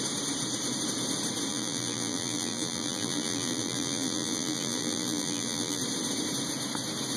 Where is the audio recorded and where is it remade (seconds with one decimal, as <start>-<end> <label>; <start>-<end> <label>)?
0.0-1.5 recorded; 1.5-5.8 remade; 5.8-7.2 recorded